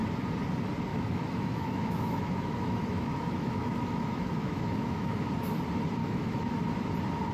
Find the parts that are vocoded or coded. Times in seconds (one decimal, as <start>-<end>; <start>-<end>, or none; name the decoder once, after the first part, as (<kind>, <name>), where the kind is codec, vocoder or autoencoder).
0.9-5.3 (autoencoder, DAC-VAE); 6.0-6.5